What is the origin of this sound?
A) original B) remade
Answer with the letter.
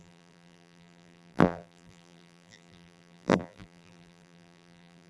B